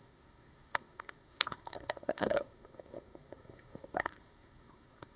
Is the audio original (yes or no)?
no